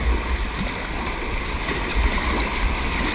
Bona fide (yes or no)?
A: yes